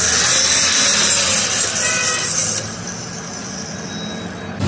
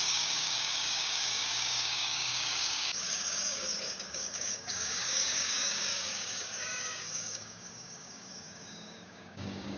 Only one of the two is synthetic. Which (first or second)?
second